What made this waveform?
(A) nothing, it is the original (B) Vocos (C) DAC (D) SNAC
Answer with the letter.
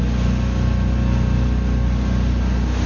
A